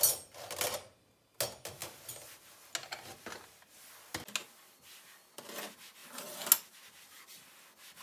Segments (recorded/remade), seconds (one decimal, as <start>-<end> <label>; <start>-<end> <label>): 0.0-6.0 recorded; 6.0-6.5 remade; 6.5-8.0 recorded